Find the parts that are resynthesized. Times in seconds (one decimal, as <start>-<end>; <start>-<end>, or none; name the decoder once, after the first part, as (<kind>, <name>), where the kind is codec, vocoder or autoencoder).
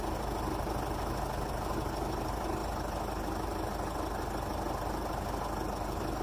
none